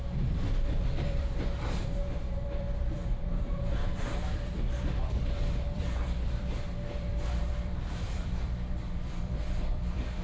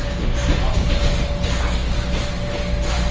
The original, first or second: second